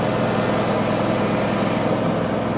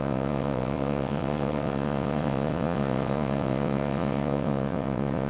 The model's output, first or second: second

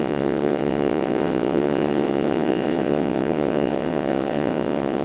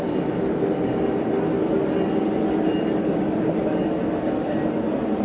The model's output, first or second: first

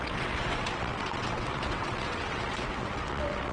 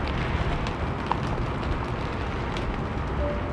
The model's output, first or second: first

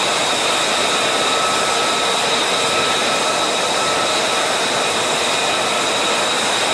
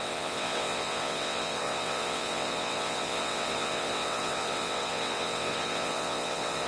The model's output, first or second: second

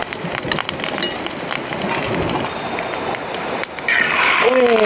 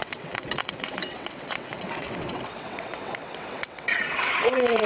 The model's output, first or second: second